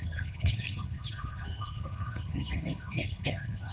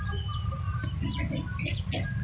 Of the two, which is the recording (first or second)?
second